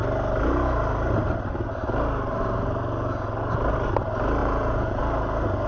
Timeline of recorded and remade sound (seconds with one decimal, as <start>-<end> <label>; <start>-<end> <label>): 0.0-4.4 recorded; 4.4-5.0 remade; 5.0-5.7 recorded